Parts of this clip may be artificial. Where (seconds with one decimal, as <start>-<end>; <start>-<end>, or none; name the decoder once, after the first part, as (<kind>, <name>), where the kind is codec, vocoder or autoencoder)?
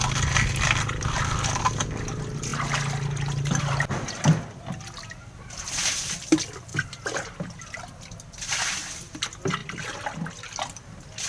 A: 6.7-7.3 (vocoder, BigVGAN v2)